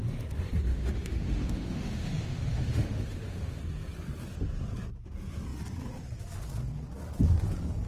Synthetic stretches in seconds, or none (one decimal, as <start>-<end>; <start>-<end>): 0.7-3.6